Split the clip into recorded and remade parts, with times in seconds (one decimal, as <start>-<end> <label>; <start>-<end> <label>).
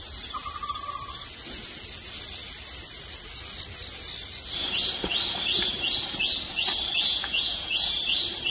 0.0-7.1 recorded; 7.1-8.0 remade; 8.0-8.5 recorded